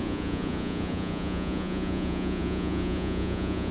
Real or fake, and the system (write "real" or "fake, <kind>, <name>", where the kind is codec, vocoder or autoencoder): fake, vocoder, Vocos